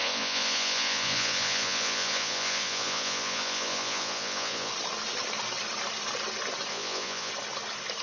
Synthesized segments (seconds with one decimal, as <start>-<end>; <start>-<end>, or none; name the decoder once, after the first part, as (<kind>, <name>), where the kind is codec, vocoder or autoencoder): 0.0-4.7 (vocoder, Vocos); 6.7-7.3